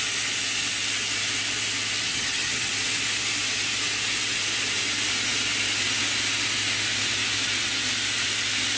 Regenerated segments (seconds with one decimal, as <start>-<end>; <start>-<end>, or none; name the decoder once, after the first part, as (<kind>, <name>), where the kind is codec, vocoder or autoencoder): 2.1-2.7 (vocoder, HiFi-GAN)